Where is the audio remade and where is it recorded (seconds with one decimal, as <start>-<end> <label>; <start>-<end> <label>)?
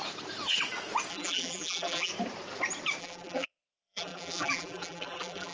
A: 0.0-1.1 recorded; 1.1-2.1 remade; 2.1-3.0 recorded; 3.0-5.5 remade